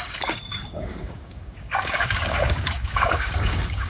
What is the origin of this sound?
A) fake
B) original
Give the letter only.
A